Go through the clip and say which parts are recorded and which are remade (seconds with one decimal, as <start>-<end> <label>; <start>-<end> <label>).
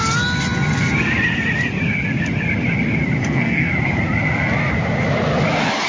0.0-3.2 recorded; 3.2-3.7 remade; 3.7-5.9 recorded